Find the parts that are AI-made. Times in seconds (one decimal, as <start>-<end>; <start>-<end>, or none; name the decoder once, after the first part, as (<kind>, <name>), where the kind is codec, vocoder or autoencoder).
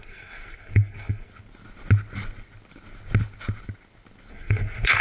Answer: 0.0-1.3 (codec, SNAC); 4.3-5.0